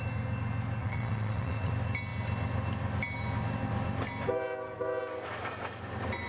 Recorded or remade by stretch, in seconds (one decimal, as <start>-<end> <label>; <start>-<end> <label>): 0.0-0.8 recorded; 0.8-1.7 remade; 1.7-6.3 recorded